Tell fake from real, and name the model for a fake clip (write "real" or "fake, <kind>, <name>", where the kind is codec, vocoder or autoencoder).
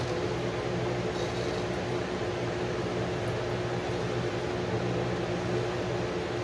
real